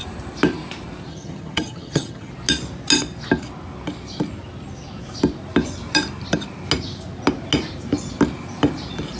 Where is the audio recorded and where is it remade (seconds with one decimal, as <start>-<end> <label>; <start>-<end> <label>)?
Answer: 0.0-1.1 recorded; 1.1-2.3 remade; 2.3-9.2 recorded